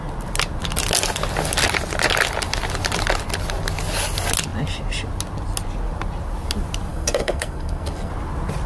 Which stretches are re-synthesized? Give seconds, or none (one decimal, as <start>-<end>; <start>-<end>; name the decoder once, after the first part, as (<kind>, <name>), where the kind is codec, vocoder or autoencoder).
6.9-8.1 (codec, SNAC)